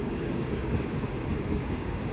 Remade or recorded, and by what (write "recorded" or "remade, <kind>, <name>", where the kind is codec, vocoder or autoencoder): remade, codec, DAC